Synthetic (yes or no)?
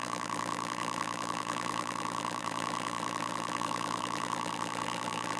yes